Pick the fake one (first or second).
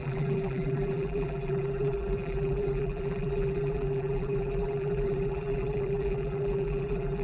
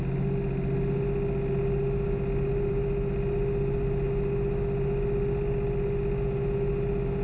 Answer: first